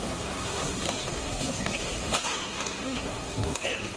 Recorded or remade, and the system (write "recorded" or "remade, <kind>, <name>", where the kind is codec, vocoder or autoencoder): remade, codec, SNAC